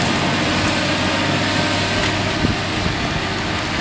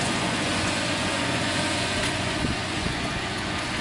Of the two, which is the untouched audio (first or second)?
first